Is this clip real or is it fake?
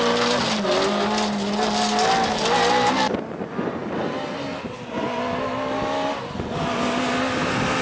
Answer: real